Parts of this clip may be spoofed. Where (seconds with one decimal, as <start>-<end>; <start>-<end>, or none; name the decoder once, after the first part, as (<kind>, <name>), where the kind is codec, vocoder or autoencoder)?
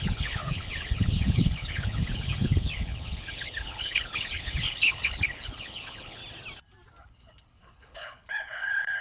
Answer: 0.0-6.2 (codec, HILCodec); 7.0-9.0